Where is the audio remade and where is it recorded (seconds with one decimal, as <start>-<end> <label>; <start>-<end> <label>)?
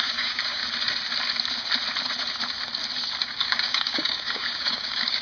0.0-0.6 remade; 0.6-3.2 recorded; 3.2-5.2 remade